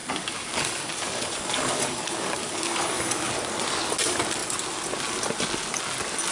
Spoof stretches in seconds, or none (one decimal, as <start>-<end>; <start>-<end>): 0.0-3.3